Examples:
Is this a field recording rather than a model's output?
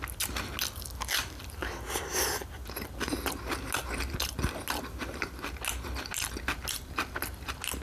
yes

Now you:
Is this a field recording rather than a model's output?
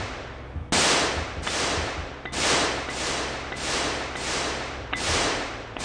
yes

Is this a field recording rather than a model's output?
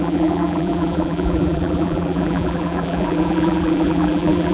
no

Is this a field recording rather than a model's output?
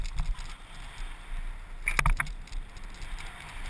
yes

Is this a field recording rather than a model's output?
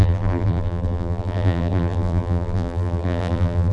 no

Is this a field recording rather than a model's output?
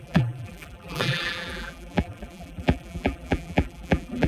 no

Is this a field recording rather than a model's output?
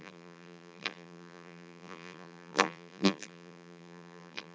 no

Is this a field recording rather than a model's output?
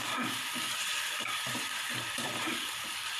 yes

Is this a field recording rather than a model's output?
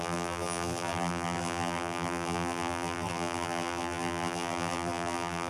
no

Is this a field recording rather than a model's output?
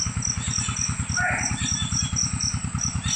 yes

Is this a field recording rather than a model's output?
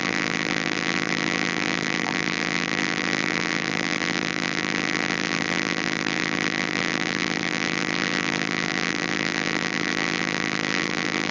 no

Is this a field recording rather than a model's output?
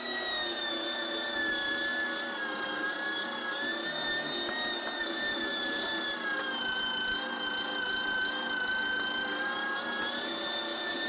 yes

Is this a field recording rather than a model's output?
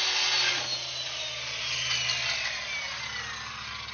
yes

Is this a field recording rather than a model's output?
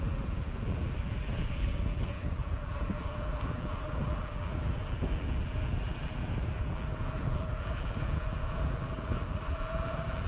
no